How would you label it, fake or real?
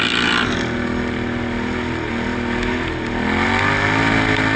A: real